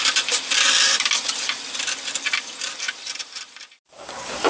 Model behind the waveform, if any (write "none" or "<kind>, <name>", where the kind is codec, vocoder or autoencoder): vocoder, BigVGAN v2